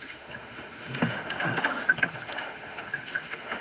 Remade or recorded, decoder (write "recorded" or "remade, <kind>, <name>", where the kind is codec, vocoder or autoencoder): remade, autoencoder, DAC-VAE